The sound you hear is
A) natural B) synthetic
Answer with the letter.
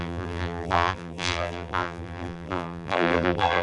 B